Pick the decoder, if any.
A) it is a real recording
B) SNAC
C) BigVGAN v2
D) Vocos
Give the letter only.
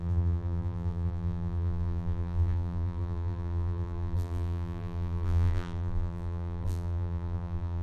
C